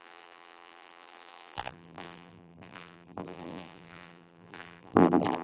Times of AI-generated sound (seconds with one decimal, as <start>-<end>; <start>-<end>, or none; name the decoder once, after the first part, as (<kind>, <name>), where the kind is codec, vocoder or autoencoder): 0.0-5.4 (vocoder, BigVGAN v2)